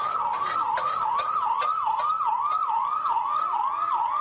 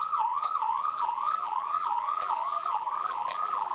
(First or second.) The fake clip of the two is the second